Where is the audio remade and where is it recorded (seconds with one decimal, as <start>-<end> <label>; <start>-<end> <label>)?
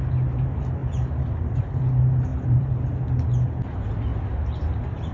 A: 0.0-0.8 recorded; 0.8-1.8 remade; 1.8-2.3 recorded; 2.3-2.8 remade; 2.8-4.1 recorded; 4.1-5.1 remade